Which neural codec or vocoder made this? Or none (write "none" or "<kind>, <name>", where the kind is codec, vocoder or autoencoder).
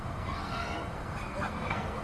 codec, SNAC